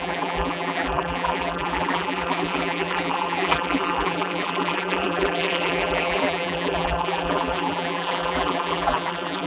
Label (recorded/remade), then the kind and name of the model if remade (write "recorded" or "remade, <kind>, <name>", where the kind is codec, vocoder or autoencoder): remade, vocoder, BigVGAN v2